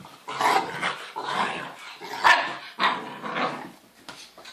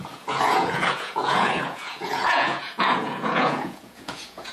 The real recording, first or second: first